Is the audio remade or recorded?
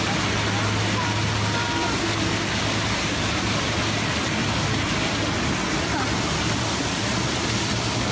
recorded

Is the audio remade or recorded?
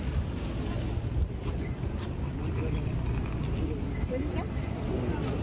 recorded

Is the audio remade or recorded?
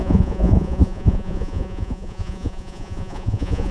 remade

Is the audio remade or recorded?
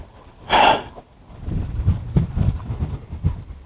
recorded